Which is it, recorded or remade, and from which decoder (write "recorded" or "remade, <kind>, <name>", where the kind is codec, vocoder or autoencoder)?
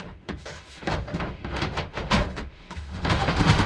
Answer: remade, autoencoder, DAC-VAE